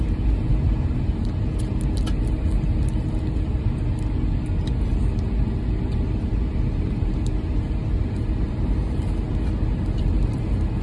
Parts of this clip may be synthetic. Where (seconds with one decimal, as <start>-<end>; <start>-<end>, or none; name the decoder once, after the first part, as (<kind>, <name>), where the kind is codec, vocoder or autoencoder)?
none